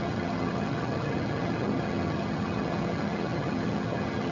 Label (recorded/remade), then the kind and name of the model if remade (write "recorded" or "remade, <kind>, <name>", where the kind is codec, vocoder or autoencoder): remade, vocoder, HiFi-GAN